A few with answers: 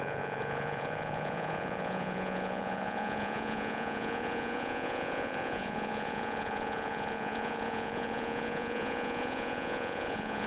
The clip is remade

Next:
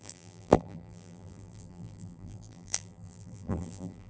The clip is remade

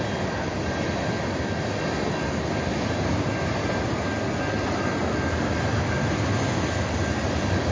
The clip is recorded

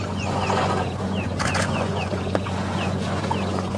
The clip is remade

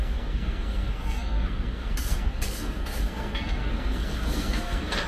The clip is remade